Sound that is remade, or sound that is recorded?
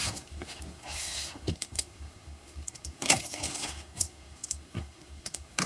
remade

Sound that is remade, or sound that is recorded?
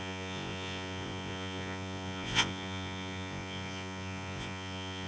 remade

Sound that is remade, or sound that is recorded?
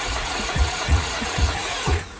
remade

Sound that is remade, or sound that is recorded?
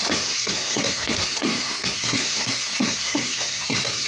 remade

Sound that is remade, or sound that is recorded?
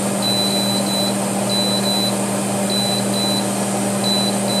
recorded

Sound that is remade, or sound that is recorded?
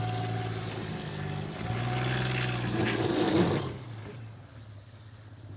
recorded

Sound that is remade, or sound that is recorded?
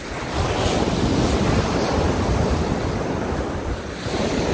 recorded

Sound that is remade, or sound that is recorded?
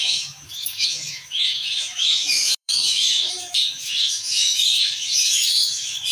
remade